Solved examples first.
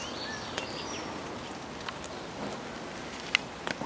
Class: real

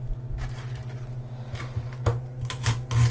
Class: real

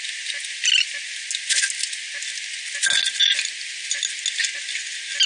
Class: real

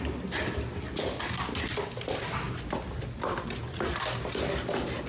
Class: real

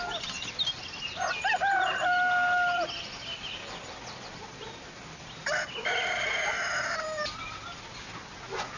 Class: real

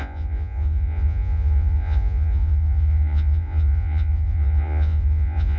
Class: fake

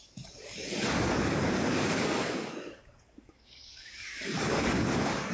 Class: fake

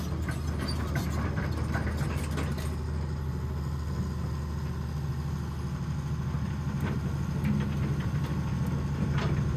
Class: real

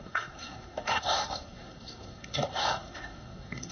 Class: fake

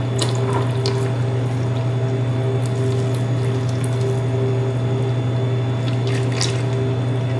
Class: real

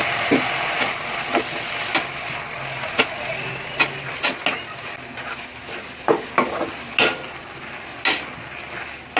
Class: real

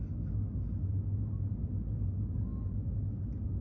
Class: real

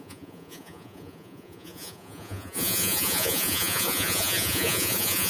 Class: fake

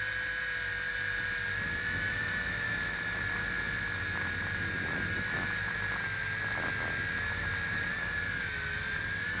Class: real